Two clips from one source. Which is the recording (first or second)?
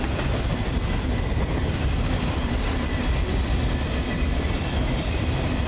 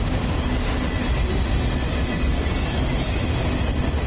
second